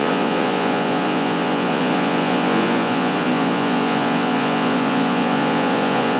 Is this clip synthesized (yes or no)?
yes